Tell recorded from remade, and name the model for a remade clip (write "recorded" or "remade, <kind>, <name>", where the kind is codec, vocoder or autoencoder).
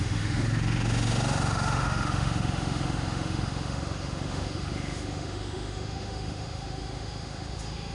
remade, autoencoder, DAC-VAE